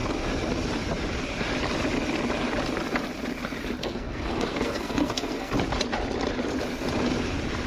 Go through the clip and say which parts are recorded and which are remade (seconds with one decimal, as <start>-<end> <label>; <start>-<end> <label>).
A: 0.0-3.8 recorded; 3.8-5.5 remade; 5.5-7.7 recorded